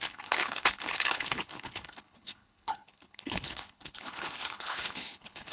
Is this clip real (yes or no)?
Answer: no